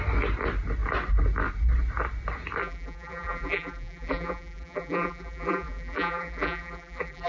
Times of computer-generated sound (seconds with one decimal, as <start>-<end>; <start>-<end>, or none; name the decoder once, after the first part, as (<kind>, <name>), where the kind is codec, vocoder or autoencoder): 2.6-7.3 (vocoder, BigVGAN v2)